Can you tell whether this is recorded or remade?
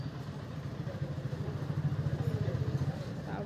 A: recorded